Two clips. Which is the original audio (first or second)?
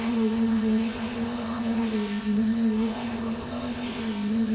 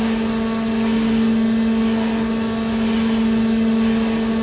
second